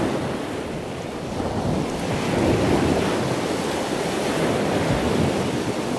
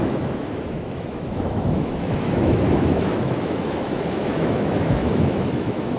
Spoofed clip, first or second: second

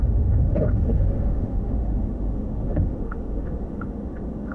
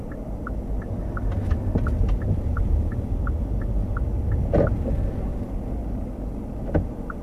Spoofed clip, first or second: first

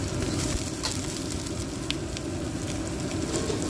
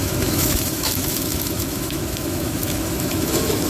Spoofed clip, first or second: second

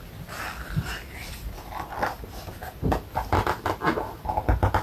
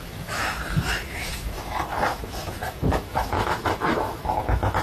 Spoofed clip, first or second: second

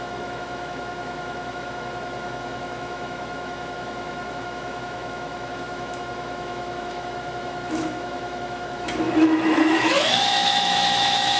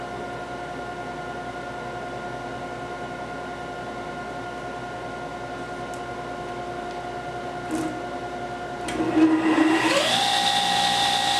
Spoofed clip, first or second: first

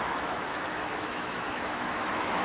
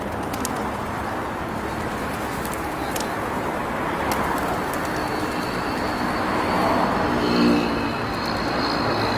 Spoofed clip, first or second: first